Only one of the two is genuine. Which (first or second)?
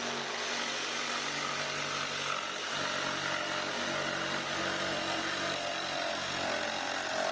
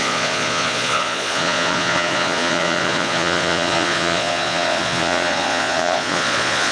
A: first